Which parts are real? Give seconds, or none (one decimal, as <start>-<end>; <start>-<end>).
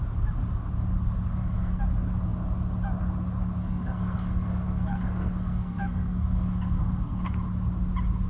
0.0-1.3; 1.8-3.6; 7.3-8.3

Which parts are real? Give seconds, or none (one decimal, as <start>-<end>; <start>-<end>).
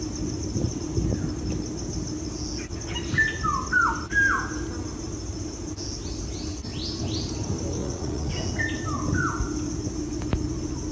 0.0-7.8; 8.3-10.9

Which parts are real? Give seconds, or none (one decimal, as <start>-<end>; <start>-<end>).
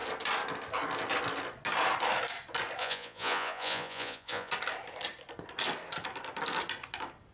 0.0-2.8; 4.5-7.3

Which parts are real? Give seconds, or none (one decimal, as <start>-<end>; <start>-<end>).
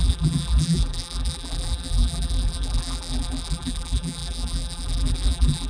none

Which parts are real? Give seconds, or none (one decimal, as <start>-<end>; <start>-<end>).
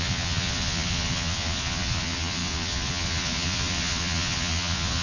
none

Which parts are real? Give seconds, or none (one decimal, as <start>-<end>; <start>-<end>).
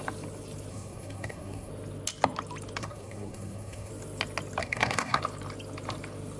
0.0-0.7; 1.7-2.8; 3.9-4.6; 5.2-6.4